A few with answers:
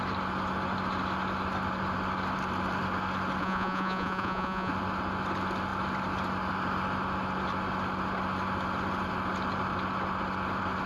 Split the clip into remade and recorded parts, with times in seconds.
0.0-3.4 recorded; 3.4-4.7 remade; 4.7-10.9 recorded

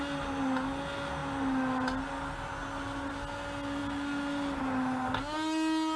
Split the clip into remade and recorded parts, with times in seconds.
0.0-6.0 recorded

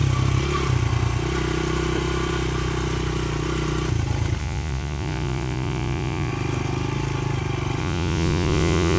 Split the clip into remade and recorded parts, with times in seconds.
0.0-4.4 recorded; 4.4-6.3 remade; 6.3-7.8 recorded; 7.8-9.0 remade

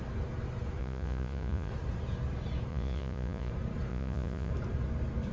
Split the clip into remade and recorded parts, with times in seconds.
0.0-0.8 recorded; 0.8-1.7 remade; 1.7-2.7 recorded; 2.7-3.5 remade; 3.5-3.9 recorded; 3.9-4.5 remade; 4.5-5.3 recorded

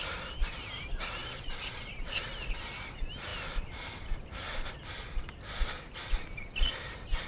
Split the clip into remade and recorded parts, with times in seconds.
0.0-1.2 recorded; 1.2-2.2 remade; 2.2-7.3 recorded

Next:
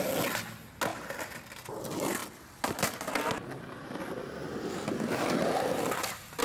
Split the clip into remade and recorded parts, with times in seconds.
0.0-6.4 recorded